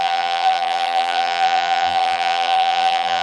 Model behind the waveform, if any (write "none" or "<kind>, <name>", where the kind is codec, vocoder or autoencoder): vocoder, BigVGAN v2